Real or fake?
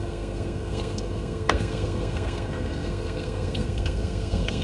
fake